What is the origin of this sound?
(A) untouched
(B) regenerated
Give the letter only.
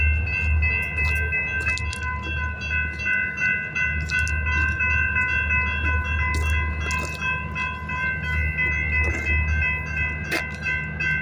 A